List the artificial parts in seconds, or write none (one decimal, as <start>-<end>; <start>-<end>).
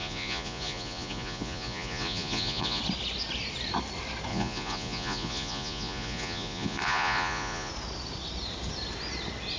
0.0-2.8; 4.3-7.7